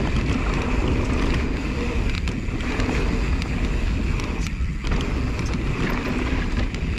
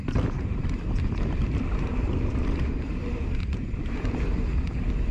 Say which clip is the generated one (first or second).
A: second